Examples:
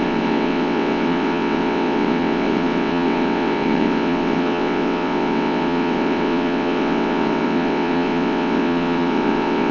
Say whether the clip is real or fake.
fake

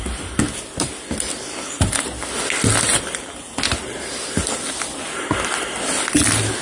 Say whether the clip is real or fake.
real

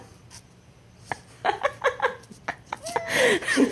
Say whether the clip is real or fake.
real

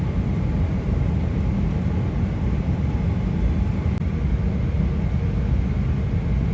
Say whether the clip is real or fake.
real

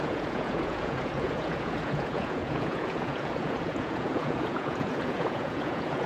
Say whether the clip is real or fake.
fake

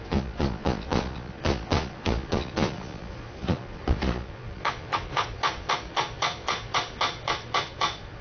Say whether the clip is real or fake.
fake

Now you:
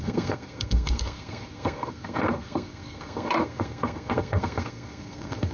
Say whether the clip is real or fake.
fake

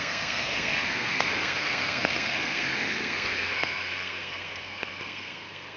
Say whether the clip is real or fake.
fake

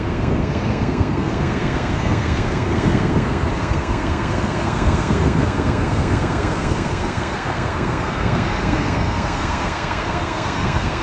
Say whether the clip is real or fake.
fake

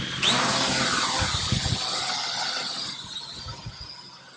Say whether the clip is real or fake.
real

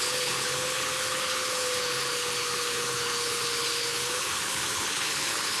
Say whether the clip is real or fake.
fake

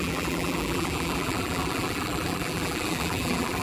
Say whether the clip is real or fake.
fake